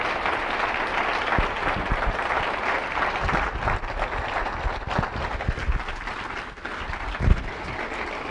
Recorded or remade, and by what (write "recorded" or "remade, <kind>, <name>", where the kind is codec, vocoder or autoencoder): recorded